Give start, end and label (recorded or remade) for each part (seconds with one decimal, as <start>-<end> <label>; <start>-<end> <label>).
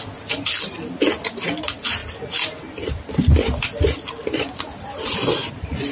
0.0-5.9 recorded